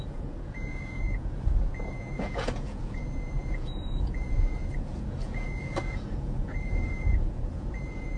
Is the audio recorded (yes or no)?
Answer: no